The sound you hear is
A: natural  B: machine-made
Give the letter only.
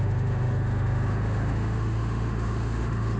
B